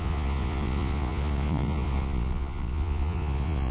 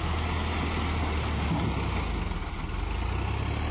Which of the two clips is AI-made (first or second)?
first